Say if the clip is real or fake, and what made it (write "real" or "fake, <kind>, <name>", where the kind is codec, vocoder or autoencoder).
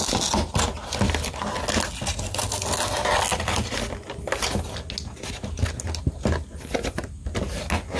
real